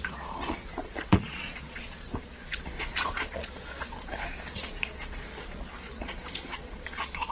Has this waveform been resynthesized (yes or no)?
yes